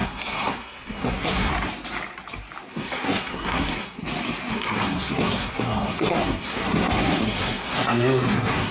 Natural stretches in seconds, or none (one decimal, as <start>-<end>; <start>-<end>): 1.5-2.7; 4.0-4.5